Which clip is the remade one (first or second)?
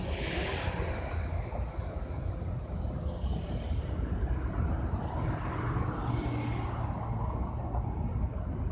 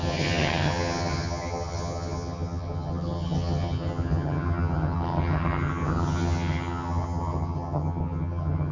second